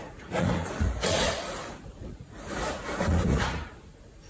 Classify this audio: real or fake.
fake